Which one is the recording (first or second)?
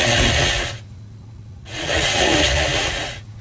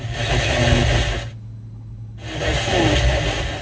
second